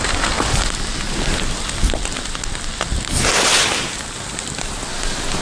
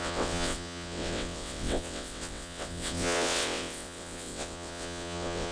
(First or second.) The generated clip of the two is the second